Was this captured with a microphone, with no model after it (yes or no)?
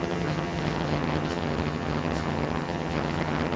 no